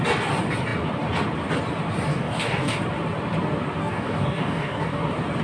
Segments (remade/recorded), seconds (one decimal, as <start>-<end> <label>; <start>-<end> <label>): 0.0-2.1 recorded; 2.1-2.8 remade; 2.8-3.8 recorded; 3.8-5.0 remade; 5.0-5.4 recorded